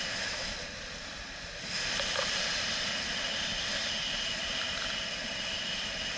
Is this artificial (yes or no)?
no